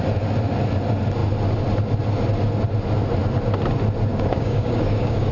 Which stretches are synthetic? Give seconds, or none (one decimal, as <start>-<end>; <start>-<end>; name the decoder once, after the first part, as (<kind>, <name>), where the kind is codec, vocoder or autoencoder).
4.1-5.3 (codec, DAC)